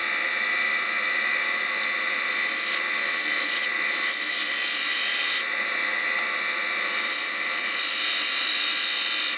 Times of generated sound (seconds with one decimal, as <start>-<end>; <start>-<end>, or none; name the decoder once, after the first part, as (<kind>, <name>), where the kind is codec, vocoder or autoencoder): none